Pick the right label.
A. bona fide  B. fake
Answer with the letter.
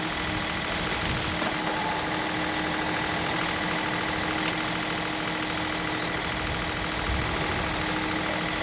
A